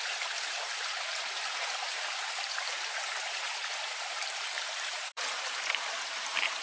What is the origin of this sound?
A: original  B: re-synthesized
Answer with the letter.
B